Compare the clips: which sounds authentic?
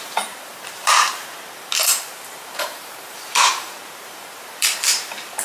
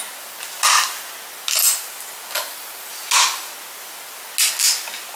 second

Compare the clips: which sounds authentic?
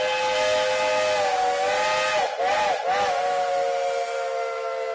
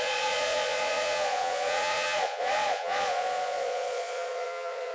first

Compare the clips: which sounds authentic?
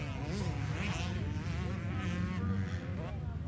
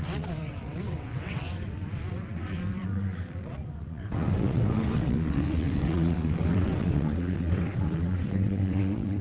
first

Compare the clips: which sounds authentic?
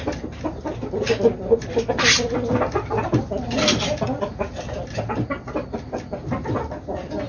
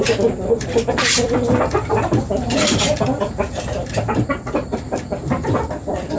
first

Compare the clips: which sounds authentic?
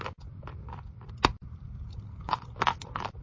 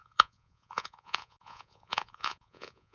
first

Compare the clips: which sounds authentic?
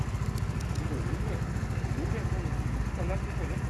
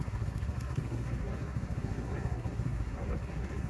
first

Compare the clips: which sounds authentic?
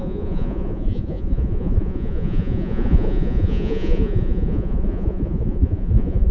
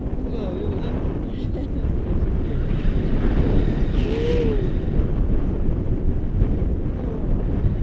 second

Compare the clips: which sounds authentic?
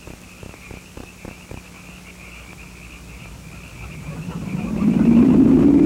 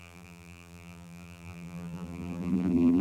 first